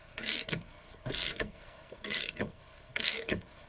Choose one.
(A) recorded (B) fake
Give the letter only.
B